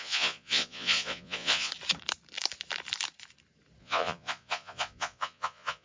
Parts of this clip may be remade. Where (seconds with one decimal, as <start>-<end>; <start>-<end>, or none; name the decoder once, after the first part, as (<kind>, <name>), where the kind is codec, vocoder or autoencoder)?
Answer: 0.0-1.7 (vocoder, Vocos); 3.8-5.8